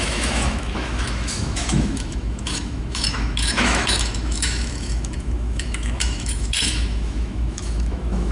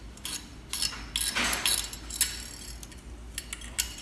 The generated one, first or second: first